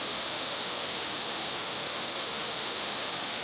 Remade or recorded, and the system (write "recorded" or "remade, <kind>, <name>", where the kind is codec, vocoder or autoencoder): remade, autoencoder, DAC-VAE